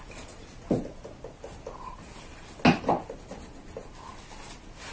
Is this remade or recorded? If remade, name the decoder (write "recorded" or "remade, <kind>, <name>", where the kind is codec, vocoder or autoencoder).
recorded